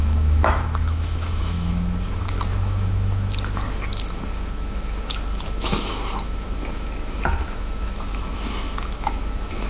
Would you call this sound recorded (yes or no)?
no